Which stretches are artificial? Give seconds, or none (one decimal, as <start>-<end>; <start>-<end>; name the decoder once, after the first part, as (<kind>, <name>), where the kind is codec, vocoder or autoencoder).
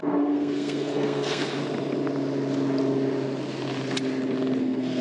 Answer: 0.0-1.6 (codec, SNAC); 4.6-5.0